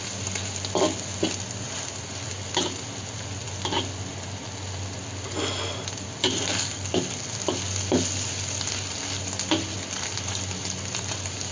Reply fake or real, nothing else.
real